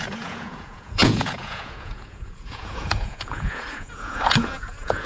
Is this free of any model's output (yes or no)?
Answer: no